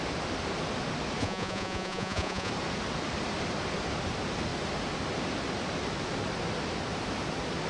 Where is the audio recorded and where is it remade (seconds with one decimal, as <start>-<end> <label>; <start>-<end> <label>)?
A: 0.0-1.2 recorded; 1.2-2.5 remade; 2.5-7.7 recorded